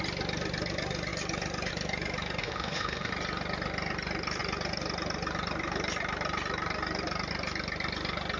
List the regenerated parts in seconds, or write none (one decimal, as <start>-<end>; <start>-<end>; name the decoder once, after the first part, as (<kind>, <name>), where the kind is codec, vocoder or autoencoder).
2.4-3.1 (autoencoder, DAC-VAE)